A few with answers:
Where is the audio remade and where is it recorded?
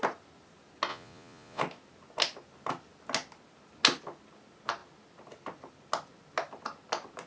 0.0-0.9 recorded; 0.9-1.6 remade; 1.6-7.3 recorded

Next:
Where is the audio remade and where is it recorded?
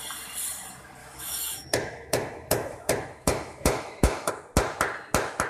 0.0-1.0 recorded; 1.0-4.3 remade; 4.3-5.5 recorded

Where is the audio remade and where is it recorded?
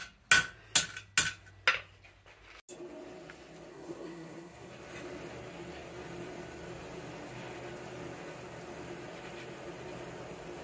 0.0-3.7 recorded; 3.7-4.7 remade; 4.7-10.6 recorded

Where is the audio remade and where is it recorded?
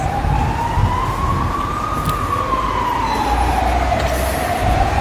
0.0-5.0 recorded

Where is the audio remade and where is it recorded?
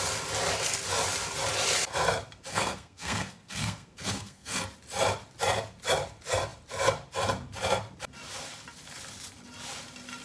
0.0-2.5 recorded; 2.5-4.6 remade; 4.6-10.2 recorded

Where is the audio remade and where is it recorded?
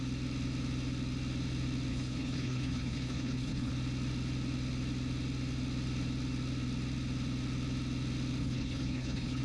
0.0-1.9 recorded; 1.9-3.7 remade; 3.7-8.4 recorded; 8.4-9.4 remade